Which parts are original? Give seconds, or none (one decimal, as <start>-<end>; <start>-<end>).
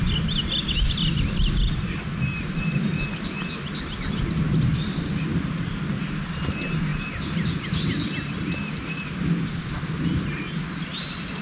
0.0-11.4